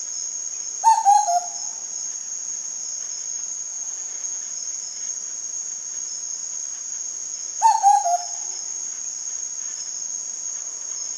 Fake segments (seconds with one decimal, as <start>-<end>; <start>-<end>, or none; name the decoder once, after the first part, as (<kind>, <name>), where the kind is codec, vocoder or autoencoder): 3.7-4.4 (vocoder, Vocos)